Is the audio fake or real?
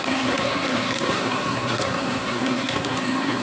fake